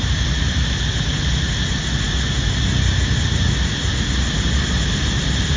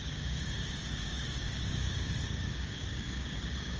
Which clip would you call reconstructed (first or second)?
second